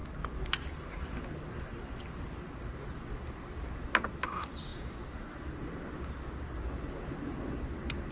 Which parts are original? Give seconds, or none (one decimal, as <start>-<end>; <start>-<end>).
0.0-8.1